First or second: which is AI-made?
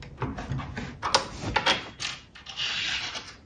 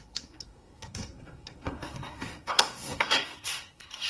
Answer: second